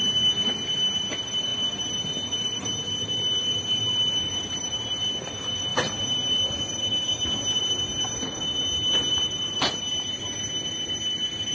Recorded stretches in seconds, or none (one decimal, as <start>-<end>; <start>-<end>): 0.0-11.5